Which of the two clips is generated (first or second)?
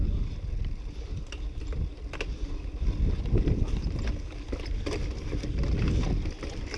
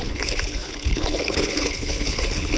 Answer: second